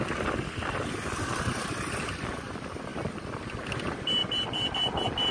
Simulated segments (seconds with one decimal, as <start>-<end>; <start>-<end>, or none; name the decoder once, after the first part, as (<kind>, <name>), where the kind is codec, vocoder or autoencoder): none